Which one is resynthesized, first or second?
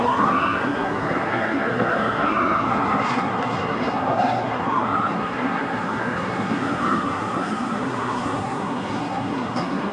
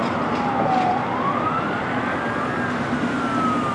first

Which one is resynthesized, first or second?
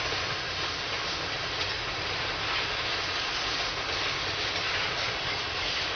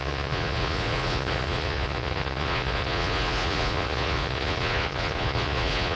second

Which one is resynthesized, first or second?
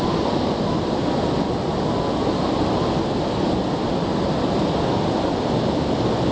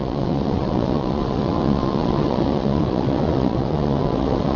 second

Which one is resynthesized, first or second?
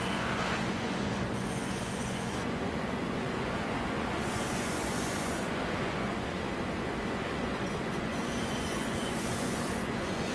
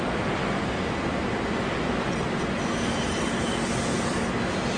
first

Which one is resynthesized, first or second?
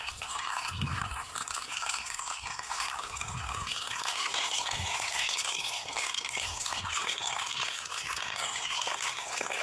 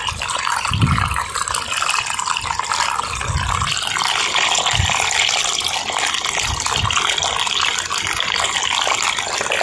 first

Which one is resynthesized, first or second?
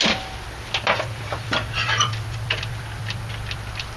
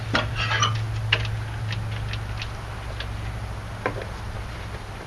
first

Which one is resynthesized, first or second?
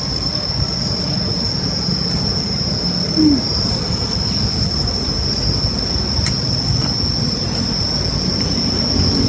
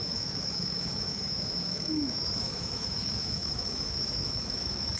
second